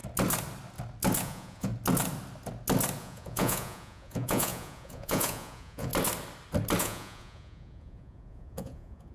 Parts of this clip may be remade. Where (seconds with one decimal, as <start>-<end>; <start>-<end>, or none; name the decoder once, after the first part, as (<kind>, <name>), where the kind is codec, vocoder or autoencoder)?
1.2-1.7 (vocoder, Vocos); 3.0-5.9; 6.8-9.1